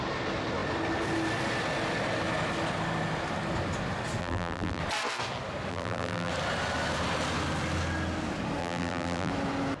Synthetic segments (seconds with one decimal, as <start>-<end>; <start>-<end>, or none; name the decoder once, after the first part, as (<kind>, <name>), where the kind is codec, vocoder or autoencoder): 4.2-4.8 (vocoder, BigVGAN v2); 5.7-6.3; 8.6-9.3